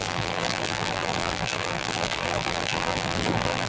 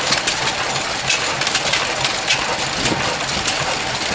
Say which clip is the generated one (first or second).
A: first